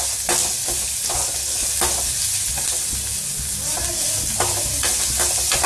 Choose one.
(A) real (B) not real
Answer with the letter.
A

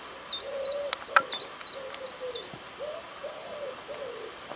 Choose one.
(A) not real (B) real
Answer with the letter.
B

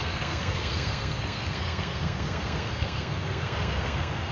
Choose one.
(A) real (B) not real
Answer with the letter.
B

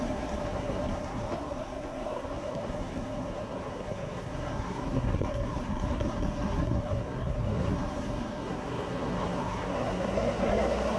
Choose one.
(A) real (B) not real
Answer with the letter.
B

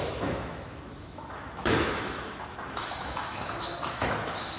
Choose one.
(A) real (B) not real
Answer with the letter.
B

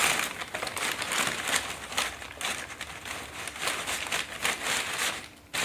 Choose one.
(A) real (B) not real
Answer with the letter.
A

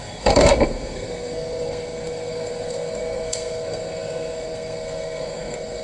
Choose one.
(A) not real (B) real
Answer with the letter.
A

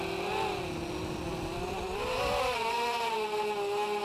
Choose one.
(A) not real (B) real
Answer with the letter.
B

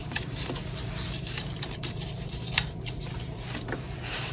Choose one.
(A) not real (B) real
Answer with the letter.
A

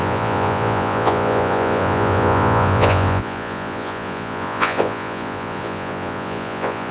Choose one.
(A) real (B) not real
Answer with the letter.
B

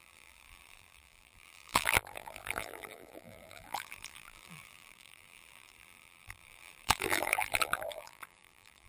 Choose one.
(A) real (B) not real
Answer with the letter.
B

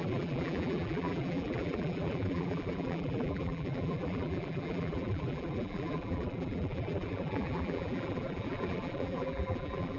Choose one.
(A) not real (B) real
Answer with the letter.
A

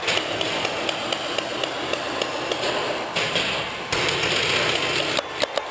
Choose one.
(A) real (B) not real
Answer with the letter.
A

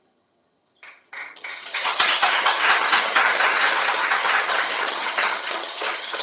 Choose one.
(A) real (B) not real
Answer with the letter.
B